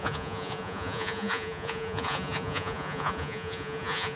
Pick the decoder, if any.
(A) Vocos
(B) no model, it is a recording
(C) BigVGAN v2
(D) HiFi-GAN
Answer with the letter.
A